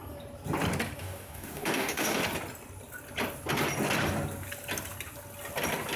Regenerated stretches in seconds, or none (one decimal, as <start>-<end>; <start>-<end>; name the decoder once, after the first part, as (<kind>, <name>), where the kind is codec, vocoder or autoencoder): 1.0-2.2 (codec, DAC)